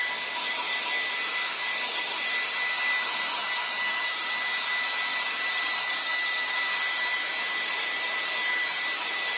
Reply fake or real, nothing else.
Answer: real